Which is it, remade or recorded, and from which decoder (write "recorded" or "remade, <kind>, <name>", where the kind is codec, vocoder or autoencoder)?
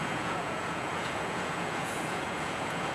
remade, vocoder, Vocos